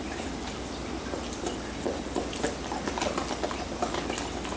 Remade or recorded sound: recorded